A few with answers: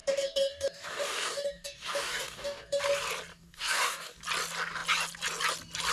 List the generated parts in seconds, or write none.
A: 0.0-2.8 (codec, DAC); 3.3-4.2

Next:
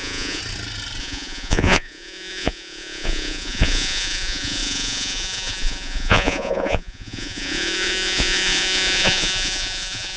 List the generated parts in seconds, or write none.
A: 0.0-0.4 (vocoder, Vocos); 1.0-10.2